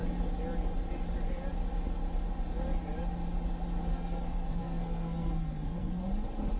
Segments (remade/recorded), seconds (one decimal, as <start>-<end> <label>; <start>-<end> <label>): 0.0-3.9 recorded; 3.9-6.0 remade; 6.0-6.6 recorded